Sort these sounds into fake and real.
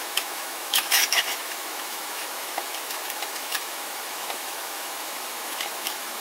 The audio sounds fake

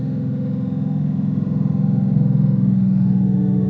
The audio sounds fake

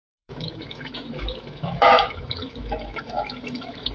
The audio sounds fake